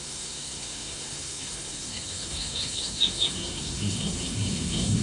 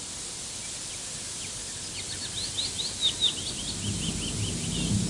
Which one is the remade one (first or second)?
first